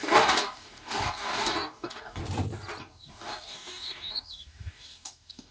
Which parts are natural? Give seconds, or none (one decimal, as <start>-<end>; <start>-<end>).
2.2-2.8